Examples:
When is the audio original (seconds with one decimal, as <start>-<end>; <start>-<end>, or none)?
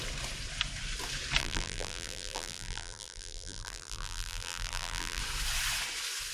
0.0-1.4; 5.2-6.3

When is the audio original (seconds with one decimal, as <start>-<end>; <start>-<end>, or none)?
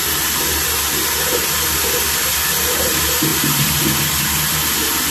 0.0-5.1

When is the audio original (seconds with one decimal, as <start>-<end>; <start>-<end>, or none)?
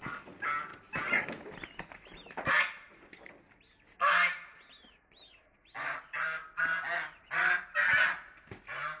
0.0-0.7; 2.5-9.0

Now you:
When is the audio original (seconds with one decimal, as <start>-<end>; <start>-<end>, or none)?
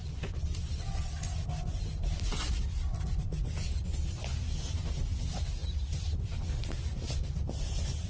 0.0-5.6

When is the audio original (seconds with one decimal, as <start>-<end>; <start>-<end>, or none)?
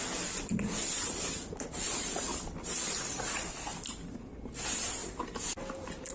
0.0-6.1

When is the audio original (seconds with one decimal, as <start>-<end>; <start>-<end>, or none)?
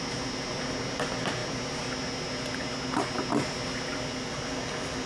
0.0-5.1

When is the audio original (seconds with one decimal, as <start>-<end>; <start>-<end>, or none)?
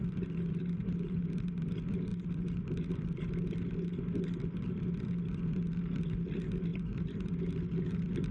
0.0-6.7; 7.4-8.3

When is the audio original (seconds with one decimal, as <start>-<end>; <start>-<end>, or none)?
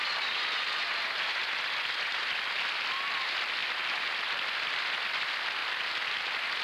0.0-1.4; 2.3-6.6